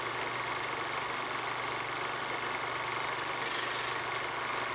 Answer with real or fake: real